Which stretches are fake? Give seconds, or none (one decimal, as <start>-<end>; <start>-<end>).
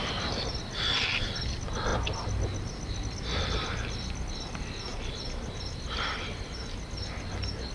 none